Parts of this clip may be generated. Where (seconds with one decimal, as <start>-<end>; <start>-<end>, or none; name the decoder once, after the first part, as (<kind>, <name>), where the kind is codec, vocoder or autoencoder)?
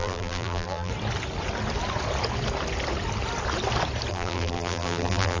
0.0-0.9 (vocoder, BigVGAN v2); 4.1-5.4